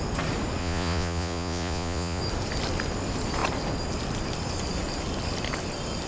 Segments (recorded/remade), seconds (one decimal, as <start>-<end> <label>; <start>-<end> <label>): 0.0-0.6 recorded; 0.6-2.2 remade; 2.2-6.1 recorded